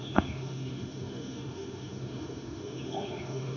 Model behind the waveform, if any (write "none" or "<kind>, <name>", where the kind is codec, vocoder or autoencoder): autoencoder, DAC-VAE